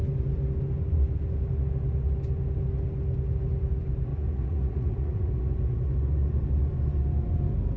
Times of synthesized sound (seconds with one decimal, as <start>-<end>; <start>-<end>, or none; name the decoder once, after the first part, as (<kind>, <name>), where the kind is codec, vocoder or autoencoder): 4.1-5.3 (vocoder, Vocos)